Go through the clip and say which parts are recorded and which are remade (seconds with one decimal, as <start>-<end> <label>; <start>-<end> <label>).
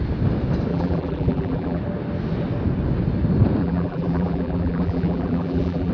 0.0-0.7 recorded; 0.7-1.8 remade; 1.8-3.6 recorded; 3.6-5.9 remade